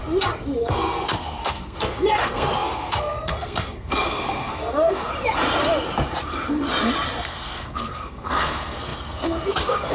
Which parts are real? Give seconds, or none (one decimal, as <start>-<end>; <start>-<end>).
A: 0.0-0.6; 5.1-7.2